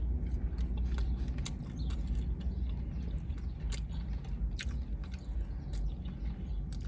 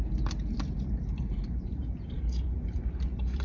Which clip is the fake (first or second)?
second